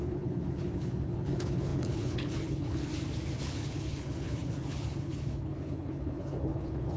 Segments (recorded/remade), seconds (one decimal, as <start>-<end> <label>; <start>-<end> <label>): 0.0-2.9 remade; 2.9-3.4 recorded; 3.4-7.0 remade